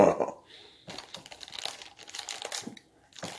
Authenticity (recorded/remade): recorded